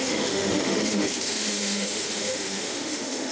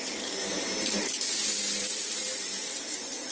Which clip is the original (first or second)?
second